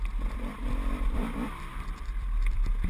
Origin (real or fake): fake